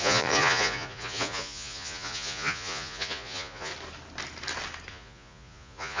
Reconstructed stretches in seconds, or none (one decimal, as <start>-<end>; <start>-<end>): 0.0-3.7; 4.9-6.0